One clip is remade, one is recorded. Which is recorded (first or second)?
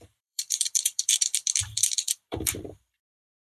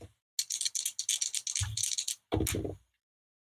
second